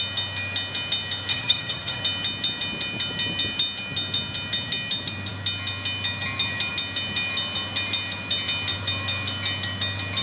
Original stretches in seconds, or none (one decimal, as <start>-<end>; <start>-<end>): 0.0-1.3; 2.0-10.2